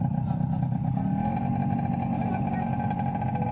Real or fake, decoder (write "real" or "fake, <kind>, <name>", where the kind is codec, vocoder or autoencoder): real